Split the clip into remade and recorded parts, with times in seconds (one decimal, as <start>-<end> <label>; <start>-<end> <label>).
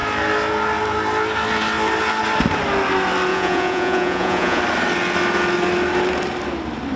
0.0-3.3 recorded; 3.3-4.6 remade; 4.6-7.0 recorded